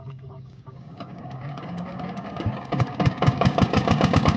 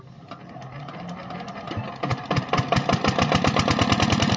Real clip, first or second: second